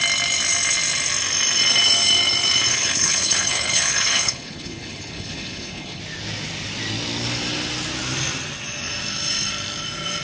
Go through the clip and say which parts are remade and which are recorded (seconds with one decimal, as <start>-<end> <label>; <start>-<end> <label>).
0.0-2.7 recorded; 2.7-6.0 remade; 6.0-10.2 recorded